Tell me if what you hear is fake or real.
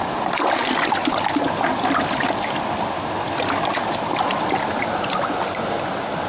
real